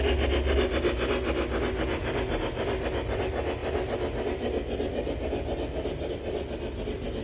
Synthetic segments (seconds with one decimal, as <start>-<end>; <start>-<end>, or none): none